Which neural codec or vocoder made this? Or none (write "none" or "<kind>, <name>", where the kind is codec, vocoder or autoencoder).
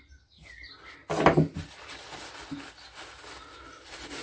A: none